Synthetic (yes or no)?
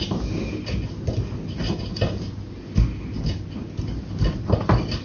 no